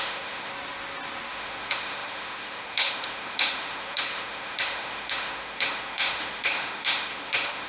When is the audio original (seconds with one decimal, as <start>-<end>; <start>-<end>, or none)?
0.5-1.3